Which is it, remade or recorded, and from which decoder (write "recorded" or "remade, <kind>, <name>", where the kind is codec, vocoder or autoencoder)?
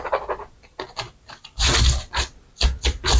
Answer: recorded